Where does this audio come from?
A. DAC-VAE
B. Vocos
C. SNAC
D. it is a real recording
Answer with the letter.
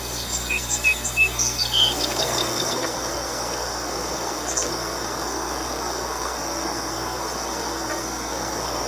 C